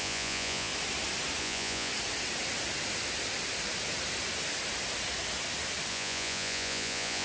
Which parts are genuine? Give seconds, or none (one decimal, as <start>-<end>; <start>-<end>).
0.7-1.4; 1.9-5.9